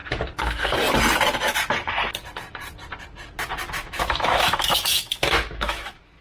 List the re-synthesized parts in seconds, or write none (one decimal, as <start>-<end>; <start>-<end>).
3.7-6.2